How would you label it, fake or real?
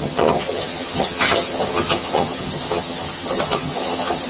fake